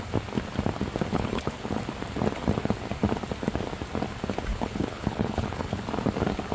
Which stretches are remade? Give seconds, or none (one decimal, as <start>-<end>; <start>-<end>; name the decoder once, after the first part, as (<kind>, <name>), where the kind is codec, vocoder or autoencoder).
1.1-1.8 (codec, HILCodec); 4.5-5.9